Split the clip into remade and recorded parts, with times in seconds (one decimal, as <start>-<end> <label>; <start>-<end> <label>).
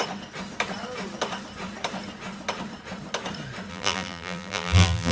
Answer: 0.0-3.7 recorded; 3.7-5.1 remade